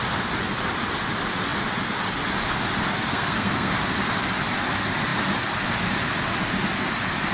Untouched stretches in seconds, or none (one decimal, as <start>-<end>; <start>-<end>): 0.0-3.1; 3.7-7.3